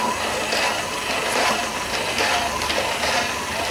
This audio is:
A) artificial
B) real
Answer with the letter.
B